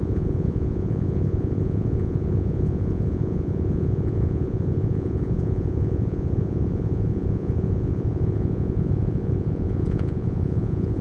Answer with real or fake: fake